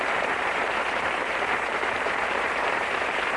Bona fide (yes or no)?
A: no